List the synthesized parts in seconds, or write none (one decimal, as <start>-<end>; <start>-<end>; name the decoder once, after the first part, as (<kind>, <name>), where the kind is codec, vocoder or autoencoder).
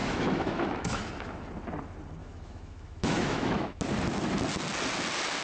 0.0-1.0 (autoencoder, DAC-VAE); 2.2-3.8